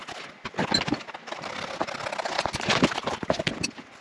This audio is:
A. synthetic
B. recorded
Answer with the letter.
B